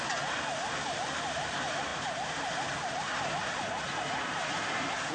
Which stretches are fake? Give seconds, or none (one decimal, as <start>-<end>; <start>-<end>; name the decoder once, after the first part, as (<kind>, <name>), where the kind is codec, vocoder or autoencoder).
none